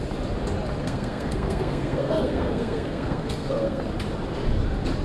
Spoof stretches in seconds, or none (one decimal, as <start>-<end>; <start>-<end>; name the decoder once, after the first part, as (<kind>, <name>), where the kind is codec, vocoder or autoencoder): 0.8-3.8 (codec, SNAC)